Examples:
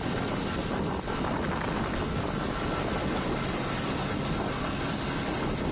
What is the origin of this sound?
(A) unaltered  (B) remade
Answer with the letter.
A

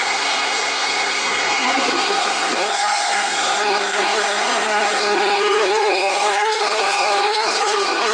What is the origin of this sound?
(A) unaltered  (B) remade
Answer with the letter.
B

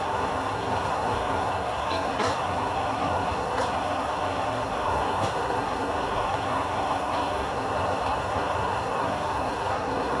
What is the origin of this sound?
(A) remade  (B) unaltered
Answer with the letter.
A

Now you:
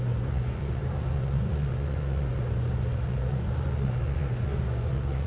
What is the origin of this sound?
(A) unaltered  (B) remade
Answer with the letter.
B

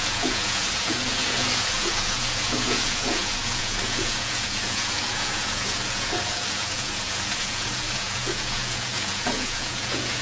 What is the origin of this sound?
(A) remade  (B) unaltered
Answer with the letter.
A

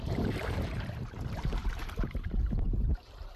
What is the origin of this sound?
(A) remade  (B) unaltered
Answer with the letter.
A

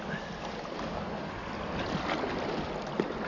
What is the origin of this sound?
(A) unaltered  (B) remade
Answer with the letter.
A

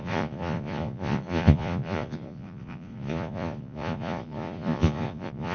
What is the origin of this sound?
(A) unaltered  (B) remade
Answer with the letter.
B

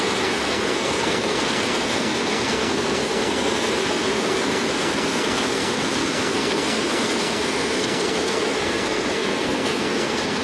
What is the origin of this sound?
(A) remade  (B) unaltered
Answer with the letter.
A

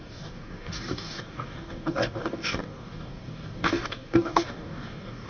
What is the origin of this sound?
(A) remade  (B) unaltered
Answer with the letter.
A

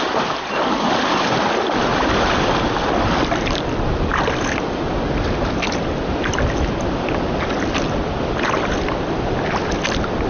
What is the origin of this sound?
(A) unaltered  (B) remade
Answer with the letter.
A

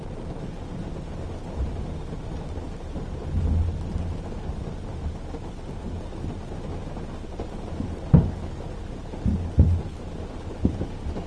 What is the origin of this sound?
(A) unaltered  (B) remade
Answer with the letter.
A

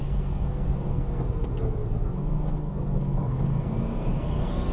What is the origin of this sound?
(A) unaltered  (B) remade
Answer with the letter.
B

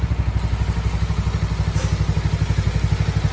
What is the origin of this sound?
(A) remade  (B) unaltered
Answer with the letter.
B